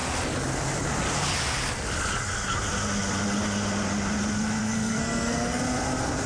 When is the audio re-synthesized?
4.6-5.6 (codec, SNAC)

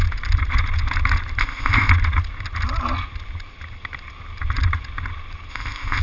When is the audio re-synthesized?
1.4-1.9 (codec, ZipCodec); 5.5-6.0